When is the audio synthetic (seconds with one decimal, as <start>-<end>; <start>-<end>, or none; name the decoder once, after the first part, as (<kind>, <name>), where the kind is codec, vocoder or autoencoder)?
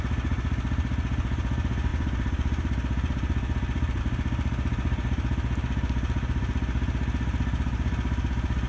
none